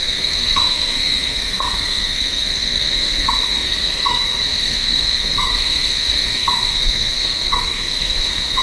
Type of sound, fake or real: fake